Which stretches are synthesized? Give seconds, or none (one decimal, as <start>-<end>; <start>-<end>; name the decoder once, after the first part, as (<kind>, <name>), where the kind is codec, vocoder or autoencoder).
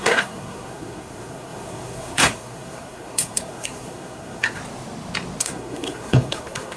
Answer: 0.0-4.6 (codec, SNAC); 5.4-6.8